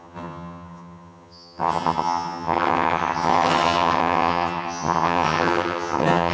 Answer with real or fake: fake